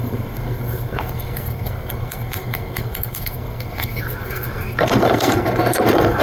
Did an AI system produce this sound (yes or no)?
yes